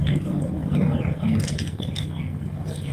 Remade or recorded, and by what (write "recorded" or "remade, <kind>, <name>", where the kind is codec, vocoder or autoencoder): remade, codec, SNAC